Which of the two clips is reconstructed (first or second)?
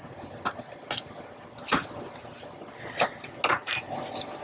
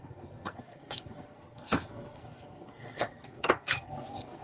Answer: second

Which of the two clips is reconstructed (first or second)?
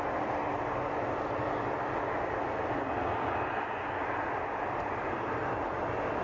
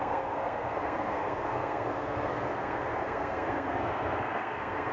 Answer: second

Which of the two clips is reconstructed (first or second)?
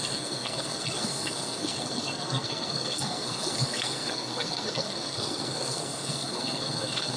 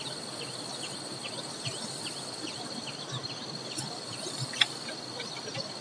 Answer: first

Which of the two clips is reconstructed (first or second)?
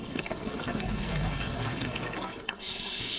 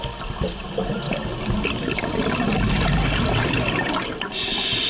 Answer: first